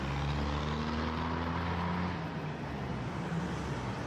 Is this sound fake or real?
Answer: real